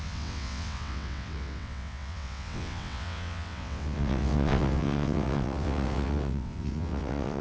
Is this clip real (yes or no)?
no